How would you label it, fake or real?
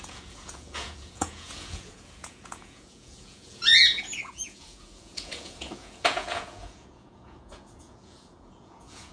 fake